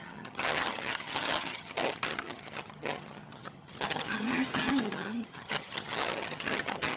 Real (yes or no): no